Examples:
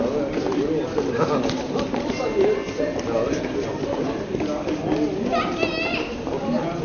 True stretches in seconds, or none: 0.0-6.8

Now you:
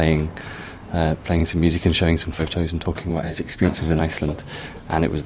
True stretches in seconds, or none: 0.0-3.1; 4.0-5.3

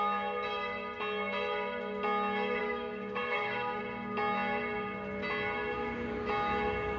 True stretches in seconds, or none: 0.0-2.6; 3.8-7.0

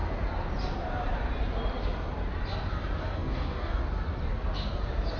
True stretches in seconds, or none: 0.0-3.0; 3.8-5.2

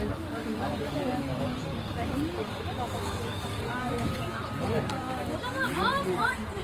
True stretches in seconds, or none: 0.0-0.4; 4.4-6.6

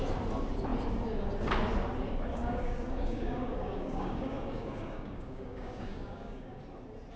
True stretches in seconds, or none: 0.0-2.3; 6.6-7.2